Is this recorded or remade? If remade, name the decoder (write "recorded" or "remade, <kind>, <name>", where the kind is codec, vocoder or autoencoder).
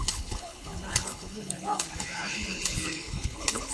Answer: remade, codec, HILCodec